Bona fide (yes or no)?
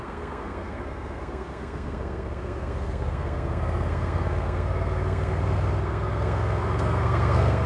no